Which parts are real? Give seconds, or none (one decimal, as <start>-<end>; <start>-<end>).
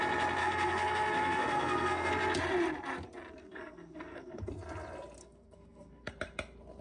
0.0-0.4; 2.1-3.4; 4.5-5.2; 6.1-6.8